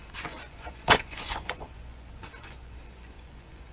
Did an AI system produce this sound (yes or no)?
yes